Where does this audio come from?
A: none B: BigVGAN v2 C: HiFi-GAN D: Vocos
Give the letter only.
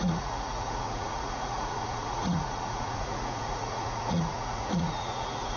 D